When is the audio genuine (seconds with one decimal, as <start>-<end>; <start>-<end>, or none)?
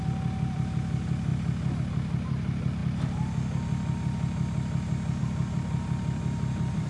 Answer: 2.8-5.2